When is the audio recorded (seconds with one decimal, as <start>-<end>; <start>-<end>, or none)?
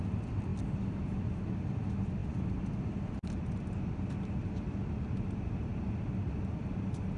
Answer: 0.0-7.2